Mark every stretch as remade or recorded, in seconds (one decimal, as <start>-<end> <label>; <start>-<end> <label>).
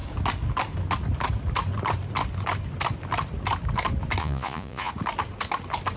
0.0-4.2 recorded; 4.2-4.9 remade; 4.9-6.0 recorded